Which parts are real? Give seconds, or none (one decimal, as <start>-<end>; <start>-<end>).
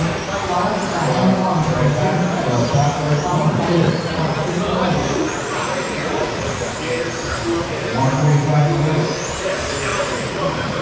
0.0-3.4; 4.6-5.0; 6.7-9.9